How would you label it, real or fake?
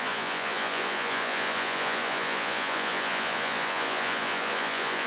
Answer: fake